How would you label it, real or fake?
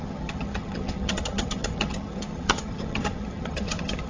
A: fake